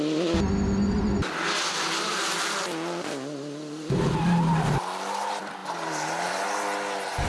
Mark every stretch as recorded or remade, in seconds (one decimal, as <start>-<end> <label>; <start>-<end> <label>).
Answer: 0.0-5.6 recorded; 5.6-6.3 remade; 6.3-7.3 recorded